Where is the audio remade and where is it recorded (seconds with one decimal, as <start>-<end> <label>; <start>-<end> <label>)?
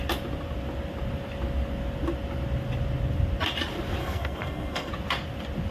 0.0-4.0 recorded; 4.0-4.9 remade; 4.9-5.7 recorded